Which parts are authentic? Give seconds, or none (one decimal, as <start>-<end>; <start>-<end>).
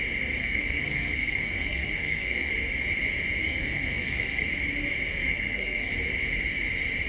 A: 0.0-0.4; 2.5-3.4; 4.5-5.1; 5.9-7.1